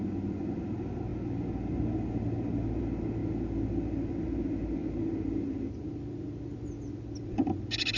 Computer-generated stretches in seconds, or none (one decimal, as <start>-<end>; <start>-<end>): none